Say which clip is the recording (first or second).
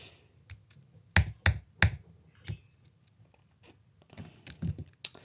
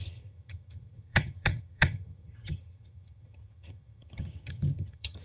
first